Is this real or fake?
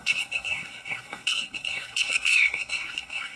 fake